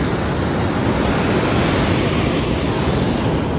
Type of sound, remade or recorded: recorded